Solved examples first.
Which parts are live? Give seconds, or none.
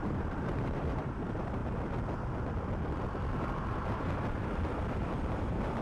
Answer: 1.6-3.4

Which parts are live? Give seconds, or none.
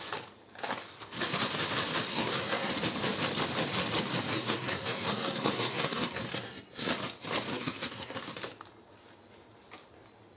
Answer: 0.0-2.1; 2.7-4.3; 6.9-7.5; 8.2-10.4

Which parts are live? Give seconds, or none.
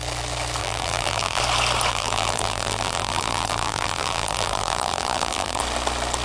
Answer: 0.0-0.6; 1.4-1.9; 5.6-6.2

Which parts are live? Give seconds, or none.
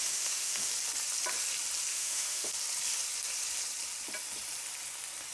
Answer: 0.7-1.9; 2.5-5.3